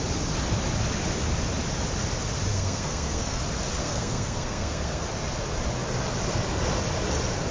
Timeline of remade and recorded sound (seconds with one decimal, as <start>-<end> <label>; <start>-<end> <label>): 0.0-2.5 recorded; 2.5-3.4 remade; 3.4-3.8 recorded; 3.8-5.0 remade; 5.0-7.5 recorded